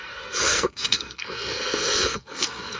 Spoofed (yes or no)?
yes